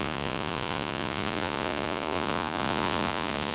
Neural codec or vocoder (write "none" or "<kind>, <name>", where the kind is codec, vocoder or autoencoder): vocoder, Vocos